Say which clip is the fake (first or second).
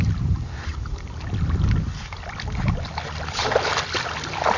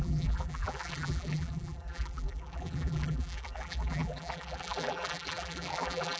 second